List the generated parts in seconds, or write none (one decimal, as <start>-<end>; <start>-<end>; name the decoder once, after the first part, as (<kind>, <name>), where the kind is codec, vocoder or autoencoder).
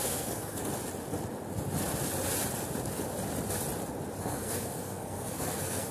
0.0-0.7 (codec, SNAC); 4.2-5.9